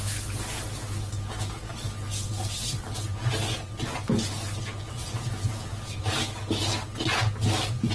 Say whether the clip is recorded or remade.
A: recorded